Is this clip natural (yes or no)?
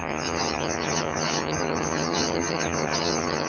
no